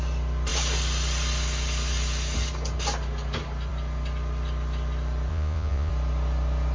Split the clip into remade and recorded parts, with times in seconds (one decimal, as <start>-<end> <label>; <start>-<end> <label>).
0.0-5.3 recorded; 5.3-5.9 remade; 5.9-6.7 recorded